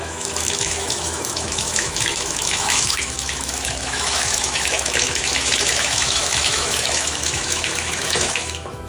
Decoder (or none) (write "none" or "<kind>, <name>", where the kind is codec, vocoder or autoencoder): autoencoder, DAC-VAE